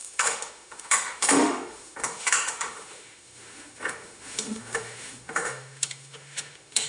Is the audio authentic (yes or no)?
no